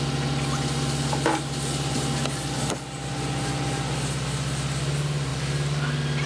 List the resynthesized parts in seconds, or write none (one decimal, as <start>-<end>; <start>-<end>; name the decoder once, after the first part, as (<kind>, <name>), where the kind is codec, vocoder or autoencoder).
none